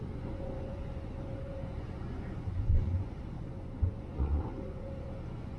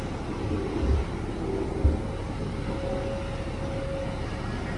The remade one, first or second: first